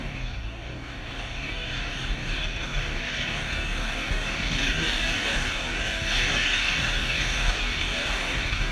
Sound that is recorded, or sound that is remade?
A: remade